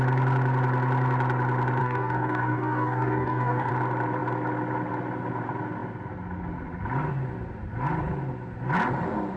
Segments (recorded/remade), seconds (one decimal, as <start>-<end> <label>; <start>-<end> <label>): 0.0-1.8 recorded; 1.8-3.7 remade; 3.7-9.4 recorded